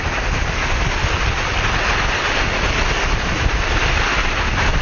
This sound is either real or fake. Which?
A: real